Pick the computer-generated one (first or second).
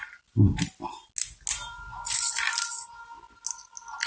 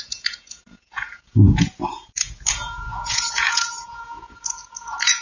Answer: second